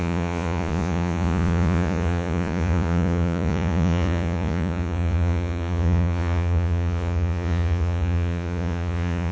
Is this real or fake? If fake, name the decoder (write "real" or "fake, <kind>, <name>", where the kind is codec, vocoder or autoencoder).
fake, vocoder, Vocos